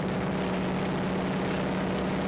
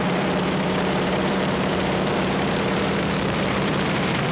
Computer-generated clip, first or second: second